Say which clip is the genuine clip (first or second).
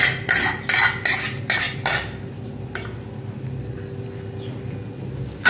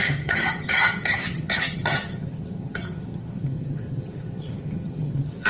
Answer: first